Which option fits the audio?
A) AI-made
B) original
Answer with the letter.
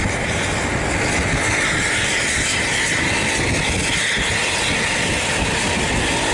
B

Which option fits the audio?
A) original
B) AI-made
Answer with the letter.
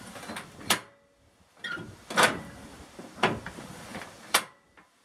A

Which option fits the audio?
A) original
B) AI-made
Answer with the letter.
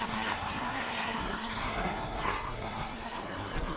B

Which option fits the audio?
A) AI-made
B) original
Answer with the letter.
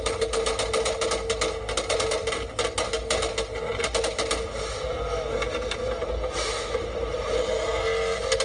B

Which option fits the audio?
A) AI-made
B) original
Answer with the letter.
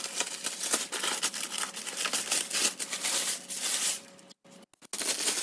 B